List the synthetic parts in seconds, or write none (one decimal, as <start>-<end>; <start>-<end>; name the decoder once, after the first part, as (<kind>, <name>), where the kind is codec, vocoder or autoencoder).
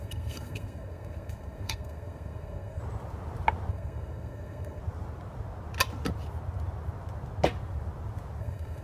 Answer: 0.0-2.8 (codec, SNAC); 3.7-4.8; 8.4-8.8